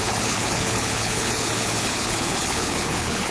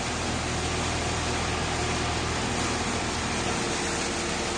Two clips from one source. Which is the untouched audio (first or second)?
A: second